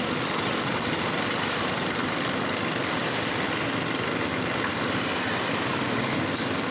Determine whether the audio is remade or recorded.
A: recorded